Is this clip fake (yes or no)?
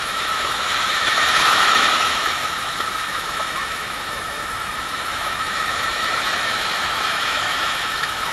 yes